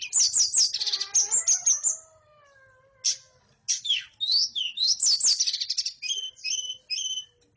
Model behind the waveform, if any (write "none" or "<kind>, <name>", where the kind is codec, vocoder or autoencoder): none